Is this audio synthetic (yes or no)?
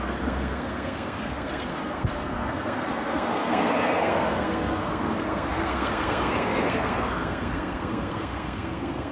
yes